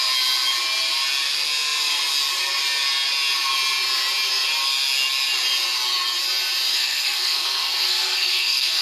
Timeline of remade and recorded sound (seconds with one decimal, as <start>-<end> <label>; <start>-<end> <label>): 0.0-6.7 recorded; 6.7-8.8 remade